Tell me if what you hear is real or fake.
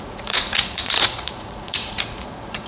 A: fake